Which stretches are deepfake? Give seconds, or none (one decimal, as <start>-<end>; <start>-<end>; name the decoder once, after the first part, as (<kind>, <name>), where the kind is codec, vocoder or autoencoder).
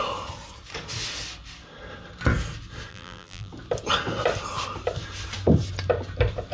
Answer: 2.9-3.5 (vocoder, BigVGAN v2)